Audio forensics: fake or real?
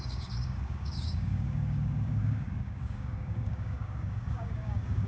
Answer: fake